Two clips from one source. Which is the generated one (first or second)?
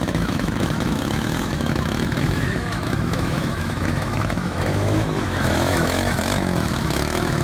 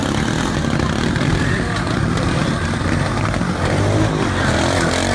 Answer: first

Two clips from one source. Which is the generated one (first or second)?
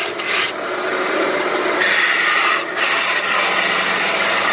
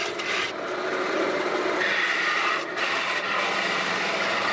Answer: second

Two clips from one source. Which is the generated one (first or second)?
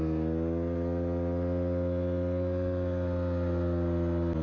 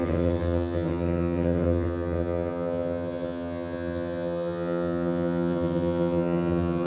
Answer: second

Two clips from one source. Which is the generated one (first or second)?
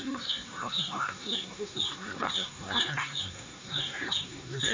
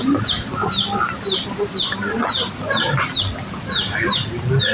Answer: first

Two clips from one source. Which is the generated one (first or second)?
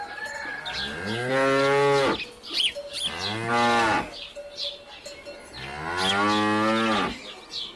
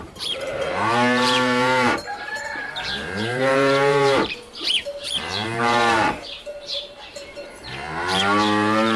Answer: second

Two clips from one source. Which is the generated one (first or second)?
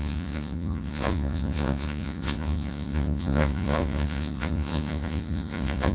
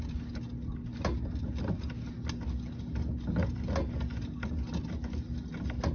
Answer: first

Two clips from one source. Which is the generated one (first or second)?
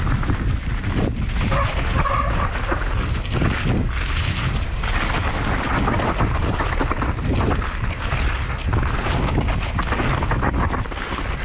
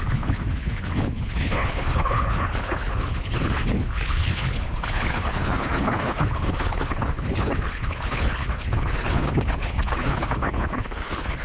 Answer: second